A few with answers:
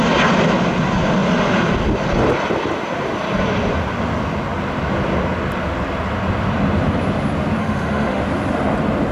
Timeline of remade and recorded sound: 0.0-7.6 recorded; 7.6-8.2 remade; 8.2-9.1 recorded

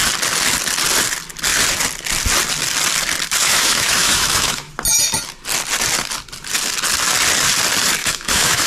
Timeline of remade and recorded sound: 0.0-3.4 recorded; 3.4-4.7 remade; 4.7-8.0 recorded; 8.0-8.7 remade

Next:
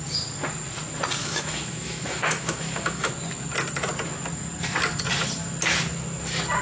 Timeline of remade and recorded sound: 0.0-1.2 recorded; 1.2-3.1 remade; 3.1-6.6 recorded

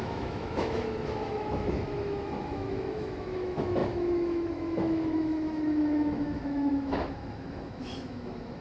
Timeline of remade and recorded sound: 0.0-8.6 remade

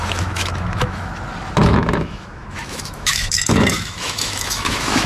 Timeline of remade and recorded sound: 0.0-1.1 remade; 1.1-1.6 recorded; 1.6-5.1 remade

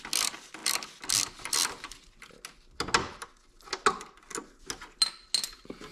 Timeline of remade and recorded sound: 0.0-5.9 recorded

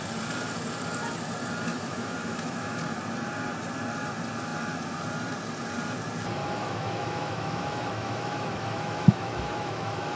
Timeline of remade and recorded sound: 0.0-1.7 recorded; 1.7-2.8 remade; 2.8-6.4 recorded; 6.4-10.2 remade

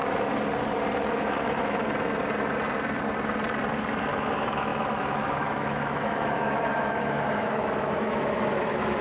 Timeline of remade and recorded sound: 0.0-1.2 recorded; 1.2-1.8 remade; 1.8-4.1 recorded; 4.1-9.0 remade